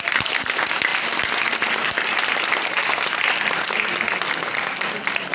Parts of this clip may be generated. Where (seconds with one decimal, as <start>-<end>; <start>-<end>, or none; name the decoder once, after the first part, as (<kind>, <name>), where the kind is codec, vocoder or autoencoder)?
none